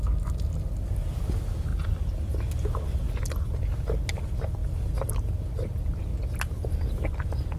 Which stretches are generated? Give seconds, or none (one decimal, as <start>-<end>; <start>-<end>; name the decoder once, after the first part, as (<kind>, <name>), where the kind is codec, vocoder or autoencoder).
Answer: 4.6-5.1 (vocoder, BigVGAN v2)